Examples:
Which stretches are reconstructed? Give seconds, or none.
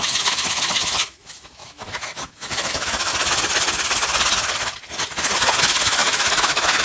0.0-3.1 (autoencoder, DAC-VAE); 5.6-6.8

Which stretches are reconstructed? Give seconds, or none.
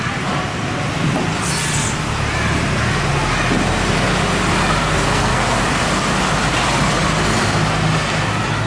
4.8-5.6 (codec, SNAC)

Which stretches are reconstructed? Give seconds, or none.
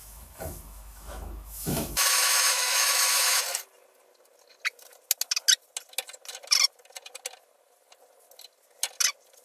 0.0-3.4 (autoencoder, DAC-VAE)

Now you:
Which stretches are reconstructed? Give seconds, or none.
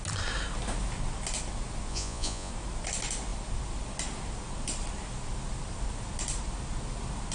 1.9-2.5 (vocoder, Vocos)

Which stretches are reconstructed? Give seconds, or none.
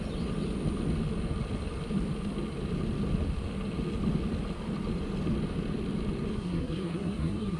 6.3-7.6 (codec, SNAC)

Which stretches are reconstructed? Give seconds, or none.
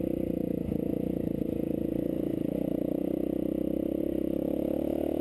none